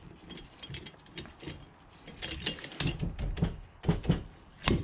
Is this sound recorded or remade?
recorded